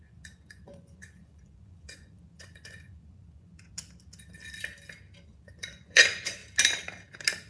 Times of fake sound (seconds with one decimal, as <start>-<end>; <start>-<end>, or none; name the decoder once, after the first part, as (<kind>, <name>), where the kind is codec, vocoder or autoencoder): 0.0-3.7 (vocoder, Vocos); 5.2-6.4